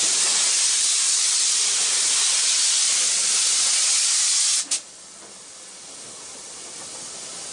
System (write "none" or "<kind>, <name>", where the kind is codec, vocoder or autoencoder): none